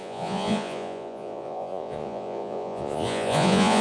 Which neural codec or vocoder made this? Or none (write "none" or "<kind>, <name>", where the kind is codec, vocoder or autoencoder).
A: vocoder, Vocos